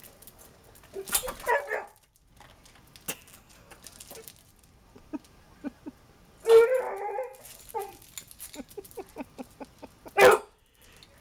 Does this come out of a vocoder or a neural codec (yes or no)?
no